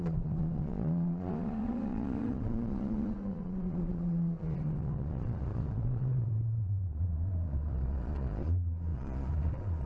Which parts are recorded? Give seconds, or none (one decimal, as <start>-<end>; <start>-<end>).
none